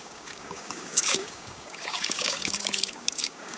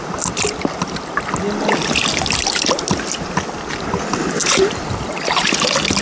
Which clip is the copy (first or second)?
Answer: first